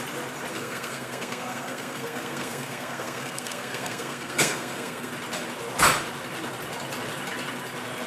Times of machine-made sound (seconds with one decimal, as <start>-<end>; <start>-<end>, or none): 0.5-5.1